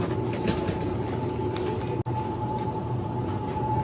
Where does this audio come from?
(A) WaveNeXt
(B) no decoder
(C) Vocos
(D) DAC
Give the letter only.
B